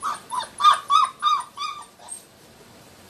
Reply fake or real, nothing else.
fake